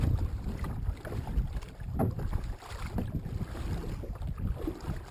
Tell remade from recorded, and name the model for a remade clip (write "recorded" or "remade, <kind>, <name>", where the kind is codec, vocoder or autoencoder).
recorded